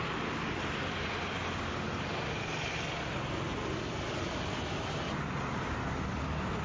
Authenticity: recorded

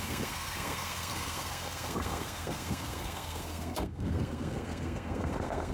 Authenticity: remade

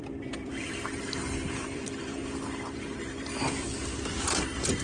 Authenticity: remade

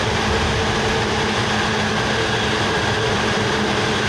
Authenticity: recorded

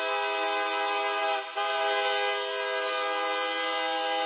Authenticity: recorded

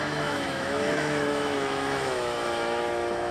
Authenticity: remade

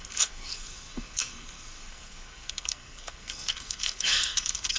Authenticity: remade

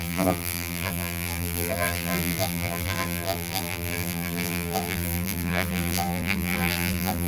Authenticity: remade